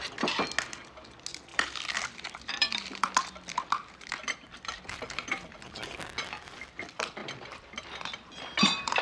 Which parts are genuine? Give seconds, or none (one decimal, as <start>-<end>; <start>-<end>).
0.0-1.5; 3.1-7.2